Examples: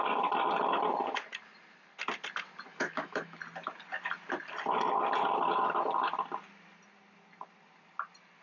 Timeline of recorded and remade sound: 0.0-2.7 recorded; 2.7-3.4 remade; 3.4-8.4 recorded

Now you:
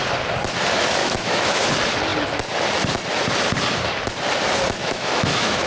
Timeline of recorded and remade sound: 0.0-1.0 recorded; 1.0-1.7 remade; 1.7-4.8 recorded; 4.8-5.7 remade

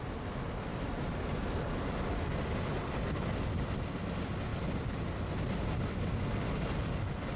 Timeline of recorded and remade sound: 0.0-7.4 recorded

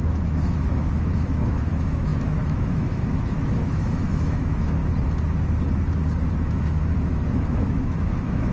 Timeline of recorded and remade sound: 0.0-4.8 remade; 4.8-6.3 recorded; 6.3-8.5 remade

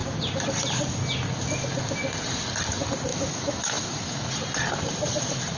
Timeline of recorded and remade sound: 0.0-3.1 recorded; 3.1-4.3 remade; 4.3-5.6 recorded

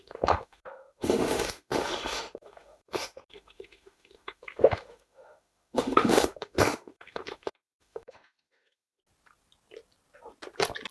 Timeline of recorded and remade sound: 0.0-9.0 remade; 9.0-10.9 recorded

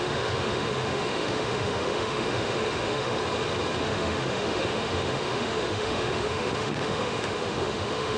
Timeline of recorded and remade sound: 0.0-3.2 remade; 3.2-3.8 recorded; 3.8-8.2 remade

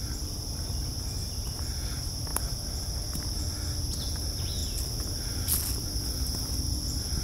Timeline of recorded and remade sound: 0.0-7.2 recorded